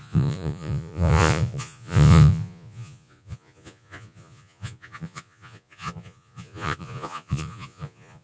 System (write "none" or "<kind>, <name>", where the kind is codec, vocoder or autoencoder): vocoder, Vocos